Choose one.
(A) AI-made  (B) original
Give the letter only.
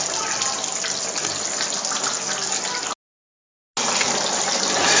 B